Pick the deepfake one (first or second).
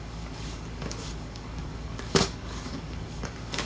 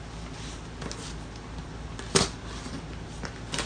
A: first